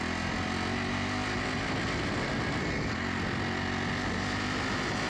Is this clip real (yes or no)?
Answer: yes